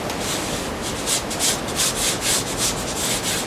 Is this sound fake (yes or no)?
no